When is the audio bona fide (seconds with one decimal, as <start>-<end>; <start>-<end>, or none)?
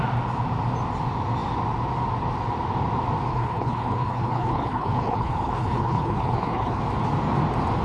0.0-3.3; 6.8-7.8